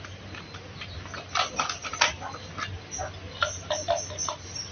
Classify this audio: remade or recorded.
recorded